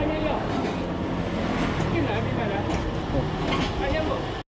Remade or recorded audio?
recorded